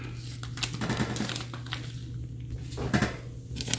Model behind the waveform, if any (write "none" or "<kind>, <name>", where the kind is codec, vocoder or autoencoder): none